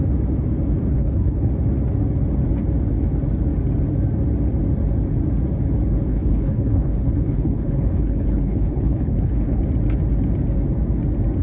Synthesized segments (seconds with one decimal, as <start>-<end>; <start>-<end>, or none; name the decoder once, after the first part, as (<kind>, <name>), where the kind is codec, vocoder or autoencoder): 0.9-1.5 (codec, HILCodec); 6.1-9.6